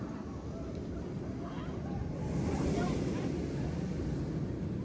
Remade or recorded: recorded